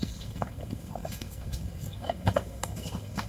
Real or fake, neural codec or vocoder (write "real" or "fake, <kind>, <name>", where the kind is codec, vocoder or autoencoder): fake, codec, SNAC